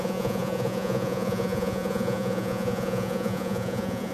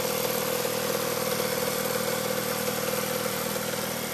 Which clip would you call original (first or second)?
second